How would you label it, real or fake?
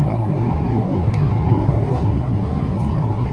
fake